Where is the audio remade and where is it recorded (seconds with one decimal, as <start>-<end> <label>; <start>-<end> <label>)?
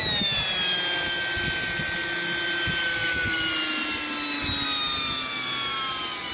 0.0-6.3 recorded